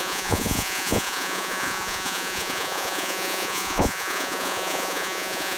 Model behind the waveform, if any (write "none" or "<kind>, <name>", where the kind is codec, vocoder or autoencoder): vocoder, Vocos